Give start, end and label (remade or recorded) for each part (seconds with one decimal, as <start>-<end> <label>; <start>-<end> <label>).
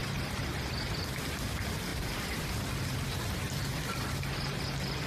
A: 0.0-0.8 remade; 0.8-1.9 recorded; 1.9-2.5 remade; 2.5-5.1 recorded